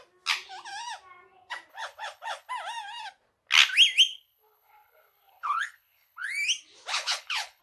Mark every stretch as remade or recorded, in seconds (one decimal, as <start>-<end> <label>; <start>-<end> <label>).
0.0-1.7 recorded; 1.7-2.5 remade; 2.5-4.1 recorded; 4.1-6.3 remade; 6.3-6.9 recorded; 6.9-7.6 remade